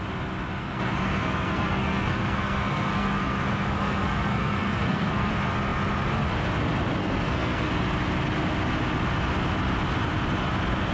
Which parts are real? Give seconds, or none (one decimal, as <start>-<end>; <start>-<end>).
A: 0.0-0.6; 5.3-7.0; 7.7-10.9